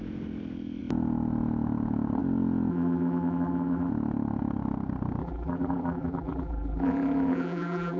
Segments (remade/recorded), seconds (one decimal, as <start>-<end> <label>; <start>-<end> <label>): 0.0-2.7 recorded; 2.7-3.9 remade; 3.9-5.2 recorded; 5.2-8.0 remade